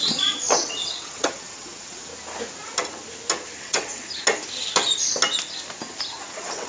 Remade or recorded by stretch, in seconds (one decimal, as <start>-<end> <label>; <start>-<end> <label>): 0.0-2.1 remade; 2.1-3.6 recorded; 3.6-4.0 remade; 4.0-6.2 recorded; 6.2-6.7 remade